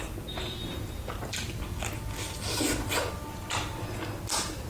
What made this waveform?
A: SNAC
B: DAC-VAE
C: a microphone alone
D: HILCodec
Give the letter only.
C